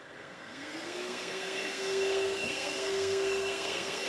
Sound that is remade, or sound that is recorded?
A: remade